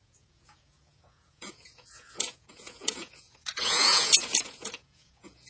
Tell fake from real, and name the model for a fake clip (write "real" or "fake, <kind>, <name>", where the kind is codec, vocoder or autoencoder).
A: fake, vocoder, Vocos